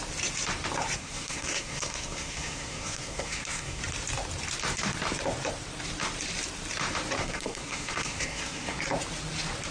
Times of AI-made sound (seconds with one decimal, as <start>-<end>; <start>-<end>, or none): 1.0-3.8; 7.2-8.8